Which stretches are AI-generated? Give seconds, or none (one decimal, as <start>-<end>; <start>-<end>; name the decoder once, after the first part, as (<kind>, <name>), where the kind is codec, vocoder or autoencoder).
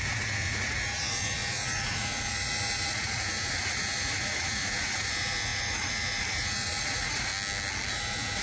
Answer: 0.0-7.3 (vocoder, Vocos); 7.9-8.4